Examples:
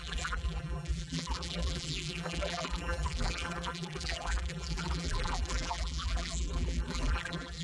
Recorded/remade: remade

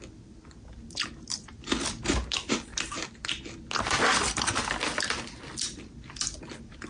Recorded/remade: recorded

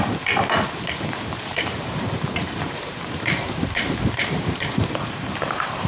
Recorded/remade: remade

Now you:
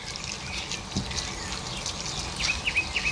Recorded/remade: recorded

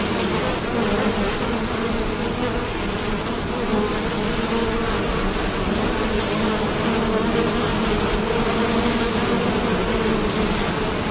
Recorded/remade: recorded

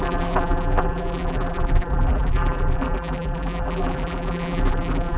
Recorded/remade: remade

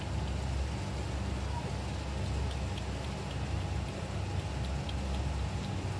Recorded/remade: recorded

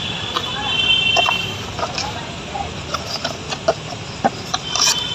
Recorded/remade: remade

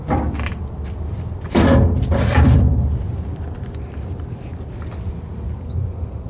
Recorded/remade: remade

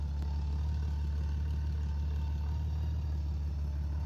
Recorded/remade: recorded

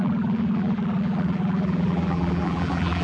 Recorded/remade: remade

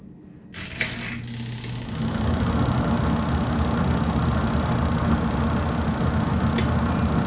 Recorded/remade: recorded